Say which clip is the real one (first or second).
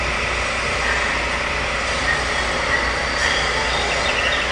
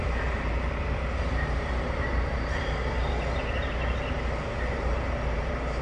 first